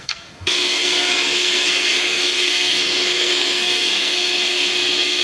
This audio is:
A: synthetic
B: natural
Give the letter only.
A